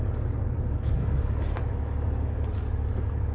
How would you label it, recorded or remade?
remade